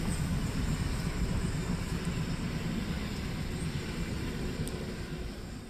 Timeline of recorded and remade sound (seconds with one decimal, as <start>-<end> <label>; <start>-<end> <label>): 0.0-5.7 recorded